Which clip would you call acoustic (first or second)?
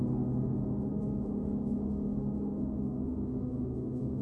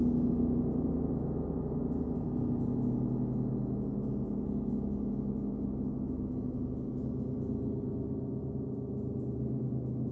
second